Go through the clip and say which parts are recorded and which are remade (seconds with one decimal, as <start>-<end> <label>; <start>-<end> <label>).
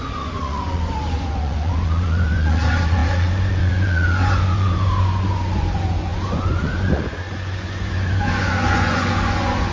0.0-9.7 remade